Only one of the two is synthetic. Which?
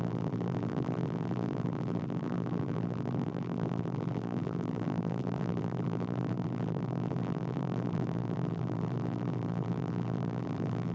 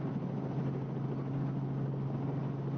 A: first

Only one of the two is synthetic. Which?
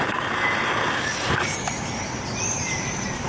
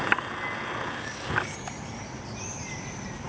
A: first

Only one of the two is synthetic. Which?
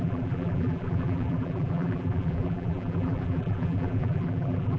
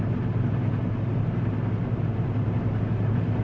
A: first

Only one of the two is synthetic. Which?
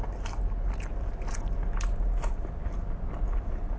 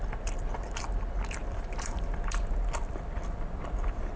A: second